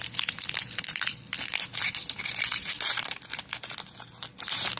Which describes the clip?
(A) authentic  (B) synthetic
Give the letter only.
A